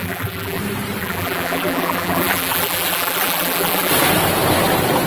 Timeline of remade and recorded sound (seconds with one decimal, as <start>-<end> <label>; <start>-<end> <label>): 0.0-0.6 remade; 0.6-1.0 recorded; 1.0-3.9 remade; 3.9-5.1 recorded